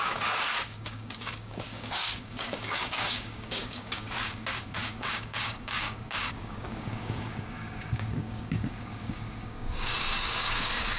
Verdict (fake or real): fake